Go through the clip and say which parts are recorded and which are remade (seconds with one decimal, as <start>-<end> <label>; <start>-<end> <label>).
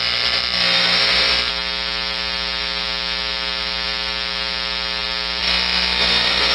0.0-1.5 remade; 1.5-5.4 recorded; 5.4-6.5 remade